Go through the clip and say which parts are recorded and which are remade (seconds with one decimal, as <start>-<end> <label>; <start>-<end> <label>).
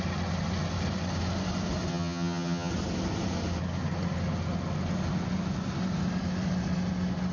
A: 0.0-1.9 recorded; 1.9-2.7 remade; 2.7-7.3 recorded